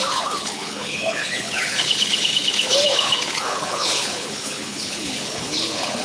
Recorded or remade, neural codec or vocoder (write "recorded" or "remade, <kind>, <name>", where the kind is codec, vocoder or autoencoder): remade, codec, HILCodec